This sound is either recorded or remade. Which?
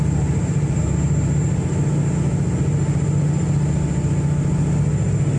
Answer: recorded